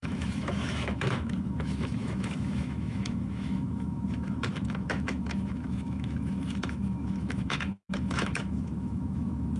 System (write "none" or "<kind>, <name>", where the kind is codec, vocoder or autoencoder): autoencoder, DAC-VAE